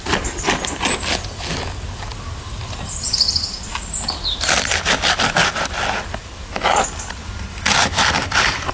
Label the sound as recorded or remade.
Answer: recorded